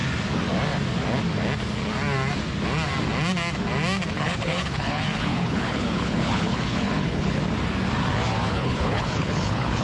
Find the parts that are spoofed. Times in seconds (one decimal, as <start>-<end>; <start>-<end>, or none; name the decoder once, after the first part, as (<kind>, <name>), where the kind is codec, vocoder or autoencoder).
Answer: 4.1-7.4 (codec, HILCodec); 8.5-9.8